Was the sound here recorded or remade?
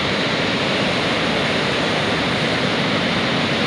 remade